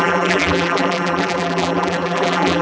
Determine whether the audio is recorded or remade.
remade